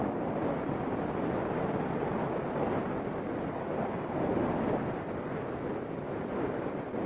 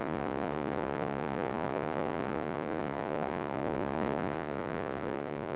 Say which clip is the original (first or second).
first